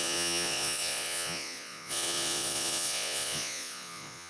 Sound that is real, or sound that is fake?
fake